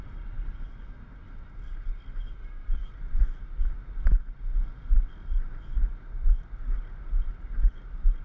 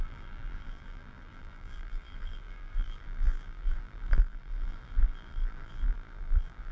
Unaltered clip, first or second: first